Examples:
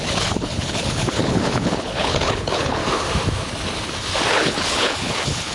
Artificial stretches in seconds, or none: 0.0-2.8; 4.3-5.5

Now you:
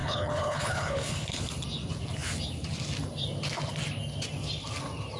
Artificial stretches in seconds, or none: 0.0-1.4

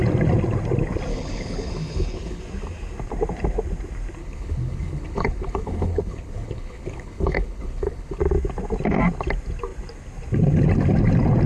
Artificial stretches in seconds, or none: 1.1-2.4; 4.2-8.2

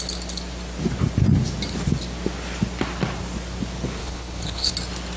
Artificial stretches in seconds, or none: 4.0-4.7

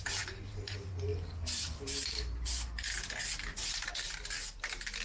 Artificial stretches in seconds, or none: none

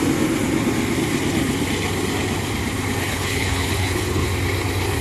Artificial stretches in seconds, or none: 3.0-4.2

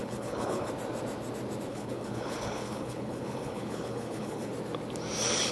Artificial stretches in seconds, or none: 0.0-0.7; 1.7-4.5

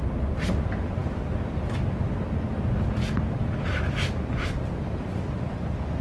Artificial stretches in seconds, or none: none